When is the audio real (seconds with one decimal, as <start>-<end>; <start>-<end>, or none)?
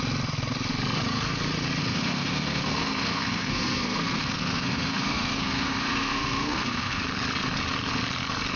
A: 0.0-1.8; 7.0-8.6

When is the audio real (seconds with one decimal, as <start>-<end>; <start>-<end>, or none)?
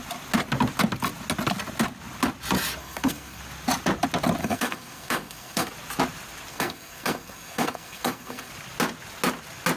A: 0.0-2.8; 3.4-4.4; 5.7-6.5; 8.5-9.8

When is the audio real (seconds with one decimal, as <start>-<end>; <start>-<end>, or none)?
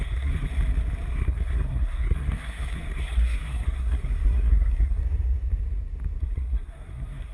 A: 0.5-1.1; 5.0-6.2